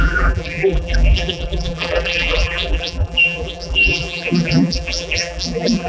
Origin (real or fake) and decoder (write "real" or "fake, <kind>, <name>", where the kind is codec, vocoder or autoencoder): fake, vocoder, BigVGAN v2